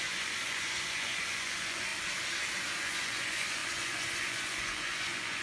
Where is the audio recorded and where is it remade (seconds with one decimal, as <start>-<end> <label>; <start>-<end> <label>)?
0.0-1.9 remade; 1.9-2.6 recorded; 2.6-5.4 remade